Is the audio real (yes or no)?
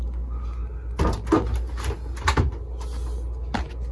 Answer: yes